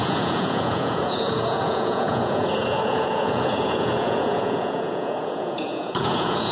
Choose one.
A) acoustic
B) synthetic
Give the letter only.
B